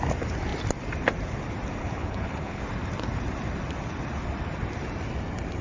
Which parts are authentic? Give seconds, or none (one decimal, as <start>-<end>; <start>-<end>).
0.0-1.8; 2.6-5.6